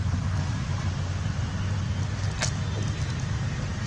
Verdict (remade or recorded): recorded